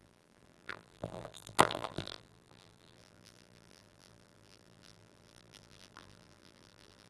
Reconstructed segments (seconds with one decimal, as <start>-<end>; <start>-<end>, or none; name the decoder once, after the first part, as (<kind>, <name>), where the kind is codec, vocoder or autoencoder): 0.0-7.1 (vocoder, BigVGAN v2)